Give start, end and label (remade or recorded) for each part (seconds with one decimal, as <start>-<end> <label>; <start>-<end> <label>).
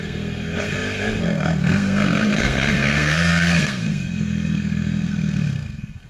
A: 0.0-6.1 remade